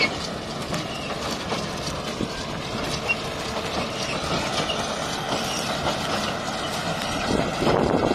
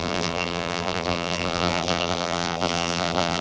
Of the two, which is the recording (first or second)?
first